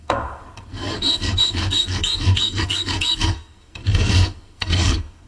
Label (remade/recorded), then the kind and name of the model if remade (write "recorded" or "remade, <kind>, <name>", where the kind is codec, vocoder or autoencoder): remade, codec, SNAC